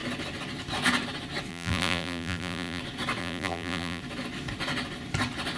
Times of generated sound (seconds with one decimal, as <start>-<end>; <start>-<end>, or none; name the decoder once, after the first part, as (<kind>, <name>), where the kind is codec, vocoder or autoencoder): 1.5-2.8 (vocoder, BigVGAN v2); 3.2-4.0